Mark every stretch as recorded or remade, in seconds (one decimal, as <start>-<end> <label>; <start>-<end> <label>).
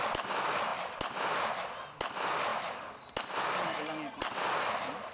0.0-5.1 recorded